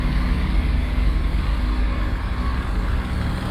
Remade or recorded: remade